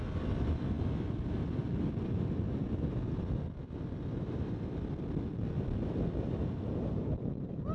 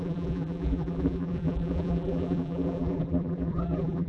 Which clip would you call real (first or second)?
first